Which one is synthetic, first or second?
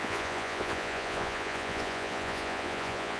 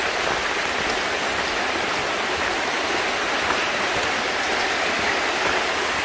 first